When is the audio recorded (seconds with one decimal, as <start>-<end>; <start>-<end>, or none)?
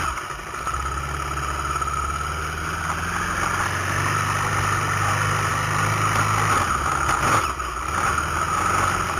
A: 0.0-9.2